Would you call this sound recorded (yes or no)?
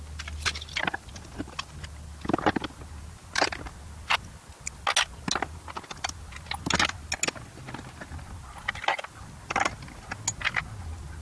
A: yes